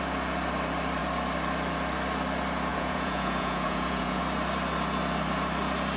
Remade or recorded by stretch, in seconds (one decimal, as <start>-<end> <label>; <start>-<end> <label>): 0.0-2.7 recorded; 2.7-4.2 remade; 4.2-6.0 recorded